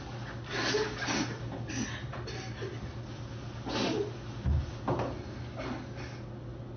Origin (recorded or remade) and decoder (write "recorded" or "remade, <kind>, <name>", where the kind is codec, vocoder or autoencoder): recorded